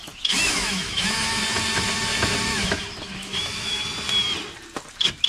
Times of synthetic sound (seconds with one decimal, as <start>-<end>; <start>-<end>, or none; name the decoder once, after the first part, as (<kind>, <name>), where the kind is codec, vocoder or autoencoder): 0.0-1.4 (autoencoder, DAC-VAE); 2.5-3.8